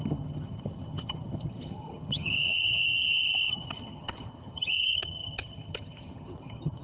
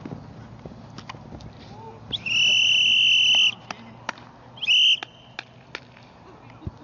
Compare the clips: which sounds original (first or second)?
second